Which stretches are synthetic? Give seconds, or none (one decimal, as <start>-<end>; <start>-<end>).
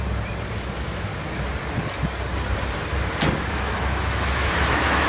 0.5-1.1; 3.5-5.1